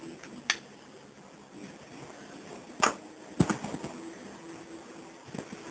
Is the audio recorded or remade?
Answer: recorded